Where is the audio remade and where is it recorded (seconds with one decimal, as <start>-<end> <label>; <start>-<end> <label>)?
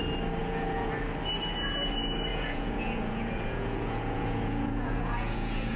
0.0-0.4 recorded; 0.4-0.9 remade; 0.9-2.3 recorded; 2.3-5.8 remade